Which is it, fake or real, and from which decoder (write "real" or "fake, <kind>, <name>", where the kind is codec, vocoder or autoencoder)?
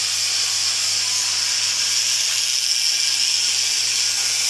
real